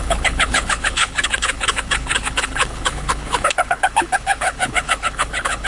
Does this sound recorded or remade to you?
remade